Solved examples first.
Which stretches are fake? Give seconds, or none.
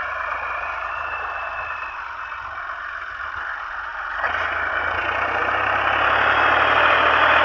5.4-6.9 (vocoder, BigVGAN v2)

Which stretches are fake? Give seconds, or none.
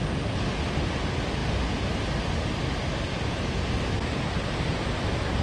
none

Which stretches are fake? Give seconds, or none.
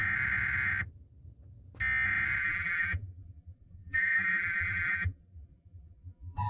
2.4-6.5 (vocoder, BigVGAN v2)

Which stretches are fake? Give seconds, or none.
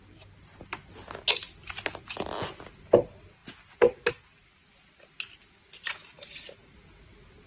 none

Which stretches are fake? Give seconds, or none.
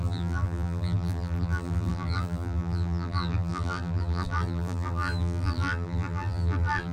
0.0-6.9 (vocoder, BigVGAN v2)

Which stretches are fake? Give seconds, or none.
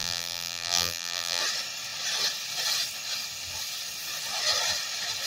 0.0-1.4 (vocoder, BigVGAN v2)